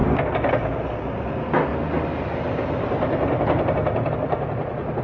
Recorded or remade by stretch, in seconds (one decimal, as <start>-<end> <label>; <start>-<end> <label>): 0.0-5.0 recorded